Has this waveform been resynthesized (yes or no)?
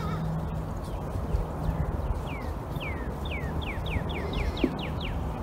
no